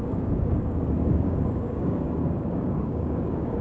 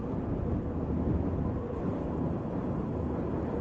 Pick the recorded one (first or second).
second